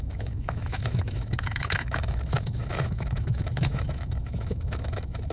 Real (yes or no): no